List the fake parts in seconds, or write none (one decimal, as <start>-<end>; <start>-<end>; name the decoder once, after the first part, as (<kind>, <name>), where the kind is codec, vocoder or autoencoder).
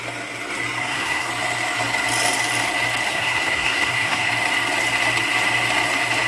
0.8-1.3 (codec, SNAC); 3.1-4.3